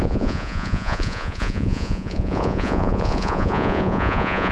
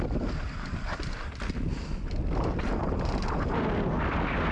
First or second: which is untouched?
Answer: second